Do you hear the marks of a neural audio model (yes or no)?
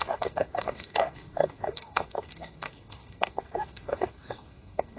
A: yes